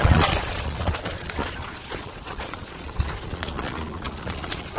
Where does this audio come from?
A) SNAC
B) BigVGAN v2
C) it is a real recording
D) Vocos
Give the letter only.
D